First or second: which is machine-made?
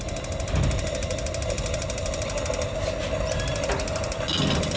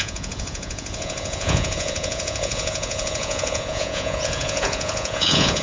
second